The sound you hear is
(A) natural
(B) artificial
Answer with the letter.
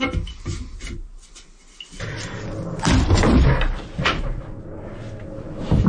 A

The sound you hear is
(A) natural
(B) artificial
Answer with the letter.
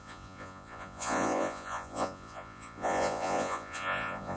B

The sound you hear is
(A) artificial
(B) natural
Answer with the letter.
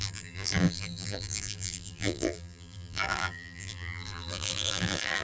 A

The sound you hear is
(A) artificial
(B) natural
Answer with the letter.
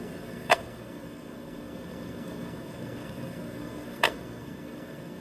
A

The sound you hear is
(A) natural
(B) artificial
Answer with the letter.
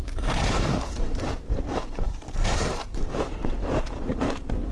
B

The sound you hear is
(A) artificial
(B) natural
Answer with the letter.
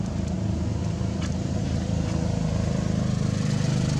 B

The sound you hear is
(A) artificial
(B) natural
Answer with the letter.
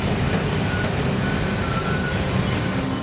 B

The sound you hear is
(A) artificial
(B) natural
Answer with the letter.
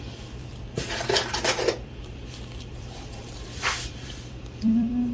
A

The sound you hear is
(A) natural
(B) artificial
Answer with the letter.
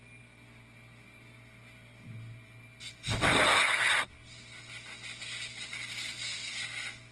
A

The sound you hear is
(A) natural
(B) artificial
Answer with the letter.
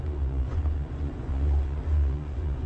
B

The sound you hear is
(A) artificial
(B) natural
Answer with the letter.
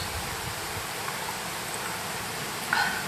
A